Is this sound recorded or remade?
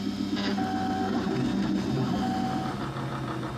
recorded